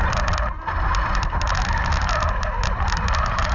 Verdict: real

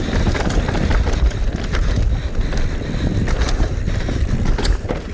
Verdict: real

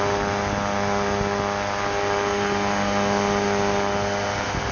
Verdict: real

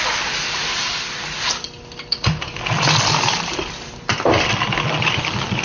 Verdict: real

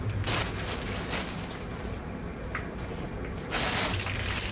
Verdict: real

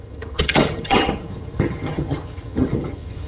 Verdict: fake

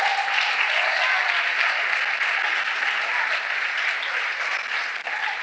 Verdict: real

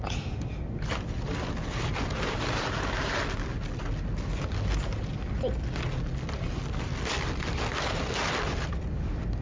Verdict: real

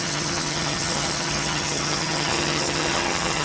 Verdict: fake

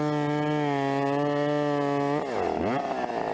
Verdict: real